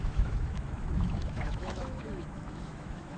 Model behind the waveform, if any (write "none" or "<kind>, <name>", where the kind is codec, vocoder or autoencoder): autoencoder, DAC-VAE